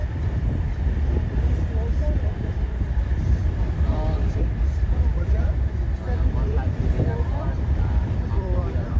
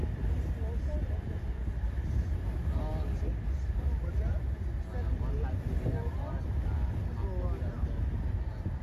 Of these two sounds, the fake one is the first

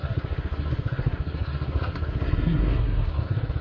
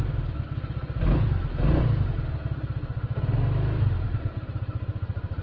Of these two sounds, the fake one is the first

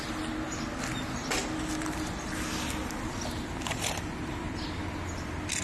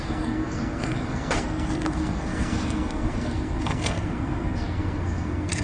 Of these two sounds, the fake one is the second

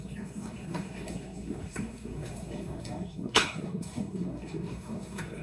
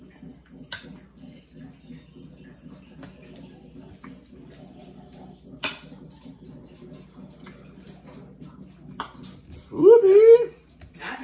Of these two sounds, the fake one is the first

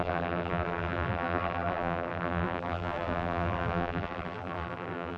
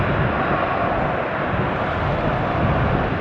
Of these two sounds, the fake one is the first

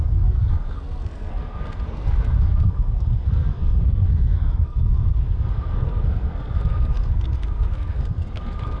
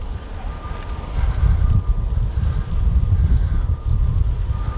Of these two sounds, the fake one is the first